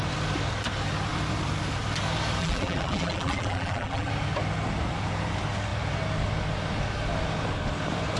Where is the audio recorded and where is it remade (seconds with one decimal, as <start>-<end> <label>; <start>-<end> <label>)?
0.0-2.4 recorded; 2.4-4.1 remade; 4.1-8.2 recorded